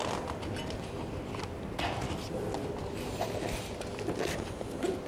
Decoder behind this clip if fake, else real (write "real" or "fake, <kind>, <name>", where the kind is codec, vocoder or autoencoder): real